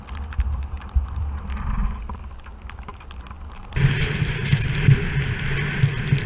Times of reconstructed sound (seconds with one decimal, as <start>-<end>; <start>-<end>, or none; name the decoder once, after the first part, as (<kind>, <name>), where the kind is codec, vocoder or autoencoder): none